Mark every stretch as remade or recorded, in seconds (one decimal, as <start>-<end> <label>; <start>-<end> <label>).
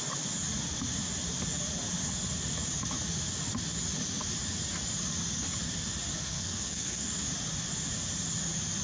0.0-6.1 recorded; 6.1-7.1 remade; 7.1-8.8 recorded